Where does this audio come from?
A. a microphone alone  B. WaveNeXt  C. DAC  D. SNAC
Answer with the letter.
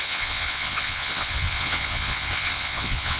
B